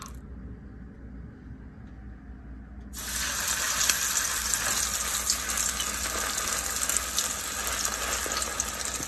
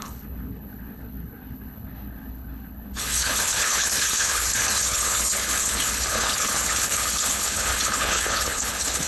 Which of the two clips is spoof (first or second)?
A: second